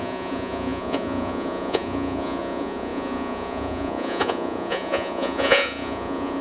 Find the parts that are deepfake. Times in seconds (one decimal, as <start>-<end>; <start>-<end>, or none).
0.0-6.4